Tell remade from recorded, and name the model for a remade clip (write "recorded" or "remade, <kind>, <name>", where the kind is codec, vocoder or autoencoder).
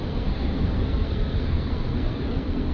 remade, codec, SNAC